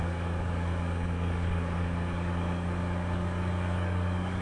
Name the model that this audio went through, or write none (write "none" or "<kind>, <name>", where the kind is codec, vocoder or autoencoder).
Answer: codec, DAC